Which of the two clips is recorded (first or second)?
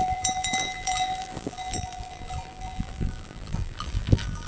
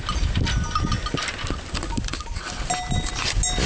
second